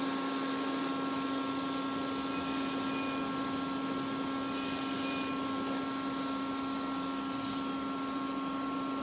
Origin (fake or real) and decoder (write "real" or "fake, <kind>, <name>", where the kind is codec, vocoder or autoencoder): real